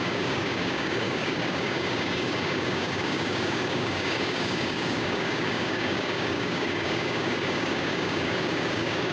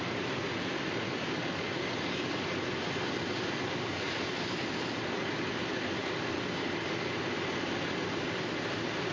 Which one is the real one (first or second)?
second